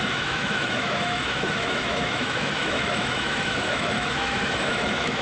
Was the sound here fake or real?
fake